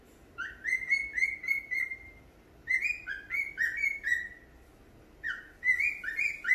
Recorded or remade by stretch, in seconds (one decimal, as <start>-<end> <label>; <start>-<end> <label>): 0.0-6.5 recorded